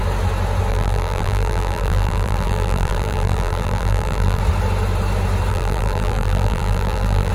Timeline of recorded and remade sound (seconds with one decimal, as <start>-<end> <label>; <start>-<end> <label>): 0.0-0.7 recorded; 0.7-4.4 remade; 4.4-5.5 recorded; 5.5-7.3 remade